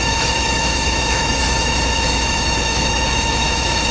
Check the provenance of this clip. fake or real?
fake